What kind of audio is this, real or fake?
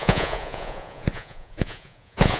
fake